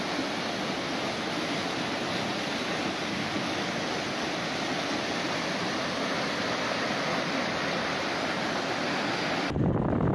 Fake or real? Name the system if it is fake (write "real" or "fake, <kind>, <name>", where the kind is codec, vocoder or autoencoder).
real